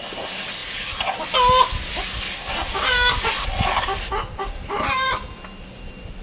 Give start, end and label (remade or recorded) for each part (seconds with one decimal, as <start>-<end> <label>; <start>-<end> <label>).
0.0-6.2 recorded